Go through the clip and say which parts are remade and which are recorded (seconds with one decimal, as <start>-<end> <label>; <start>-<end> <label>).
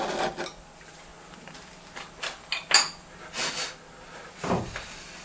0.0-1.1 recorded; 1.1-2.1 remade; 2.1-5.2 recorded